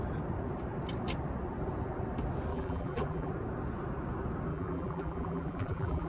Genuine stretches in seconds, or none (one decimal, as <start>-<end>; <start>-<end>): 0.0-2.5; 3.3-4.5